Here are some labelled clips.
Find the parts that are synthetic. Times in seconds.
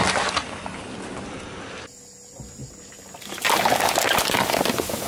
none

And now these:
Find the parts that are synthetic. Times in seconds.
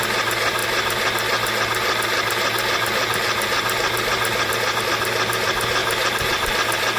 5.8-6.5